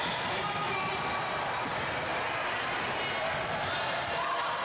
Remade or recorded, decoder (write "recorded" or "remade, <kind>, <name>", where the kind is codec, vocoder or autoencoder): recorded